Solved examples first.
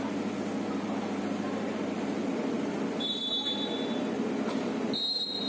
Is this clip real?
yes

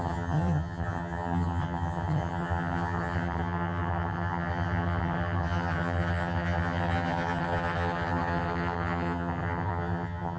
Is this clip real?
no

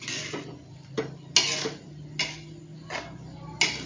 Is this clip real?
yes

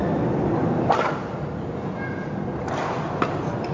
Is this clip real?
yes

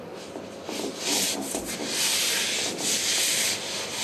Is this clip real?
yes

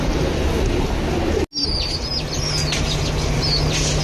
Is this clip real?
yes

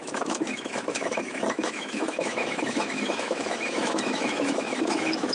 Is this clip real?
no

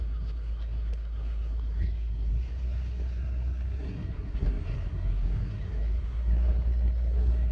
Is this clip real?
no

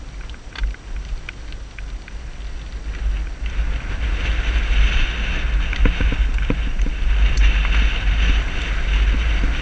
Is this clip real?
yes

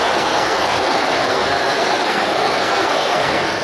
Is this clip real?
no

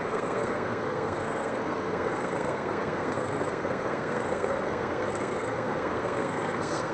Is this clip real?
no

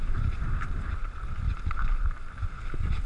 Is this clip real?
no